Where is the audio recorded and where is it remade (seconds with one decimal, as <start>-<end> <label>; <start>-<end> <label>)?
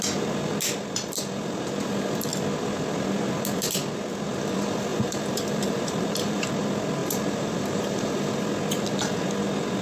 0.0-4.9 recorded; 4.9-6.5 remade; 6.5-7.0 recorded; 7.0-8.4 remade; 8.4-9.8 recorded